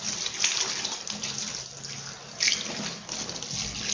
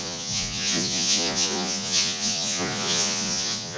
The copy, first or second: second